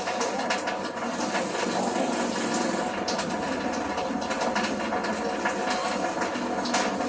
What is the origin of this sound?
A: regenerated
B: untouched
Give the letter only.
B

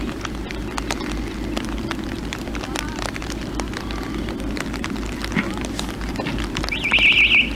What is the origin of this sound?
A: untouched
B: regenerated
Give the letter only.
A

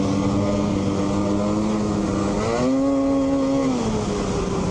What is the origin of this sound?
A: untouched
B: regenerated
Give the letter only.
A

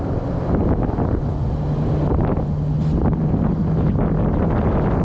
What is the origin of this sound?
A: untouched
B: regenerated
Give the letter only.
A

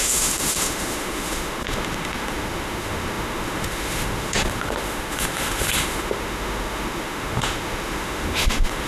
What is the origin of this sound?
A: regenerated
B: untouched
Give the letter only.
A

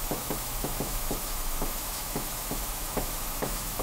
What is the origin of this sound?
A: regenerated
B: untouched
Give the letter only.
A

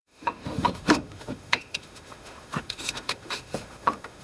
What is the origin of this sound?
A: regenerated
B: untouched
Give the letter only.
A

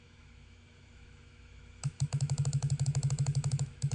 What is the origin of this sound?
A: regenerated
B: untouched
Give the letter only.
A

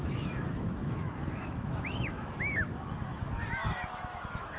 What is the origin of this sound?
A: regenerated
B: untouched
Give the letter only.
A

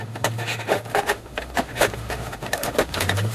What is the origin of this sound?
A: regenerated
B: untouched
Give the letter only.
A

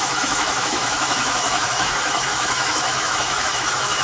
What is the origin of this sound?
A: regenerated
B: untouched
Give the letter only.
A